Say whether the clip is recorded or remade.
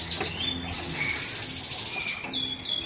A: recorded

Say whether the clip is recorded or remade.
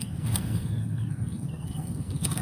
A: remade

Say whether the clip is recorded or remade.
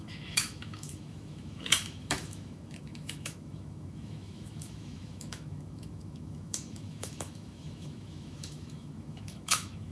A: remade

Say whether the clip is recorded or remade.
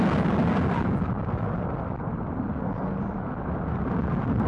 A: recorded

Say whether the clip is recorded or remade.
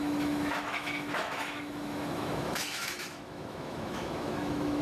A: remade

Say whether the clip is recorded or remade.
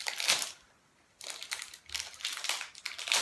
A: recorded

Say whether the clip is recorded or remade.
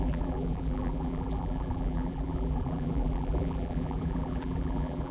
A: remade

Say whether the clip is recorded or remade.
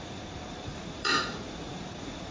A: remade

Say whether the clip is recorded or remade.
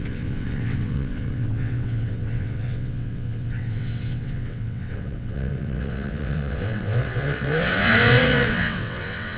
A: remade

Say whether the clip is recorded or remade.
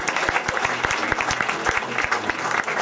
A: recorded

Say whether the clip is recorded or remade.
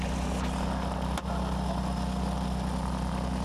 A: recorded